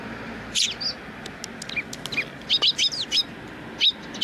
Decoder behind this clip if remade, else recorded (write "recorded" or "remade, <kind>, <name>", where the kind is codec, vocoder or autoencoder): recorded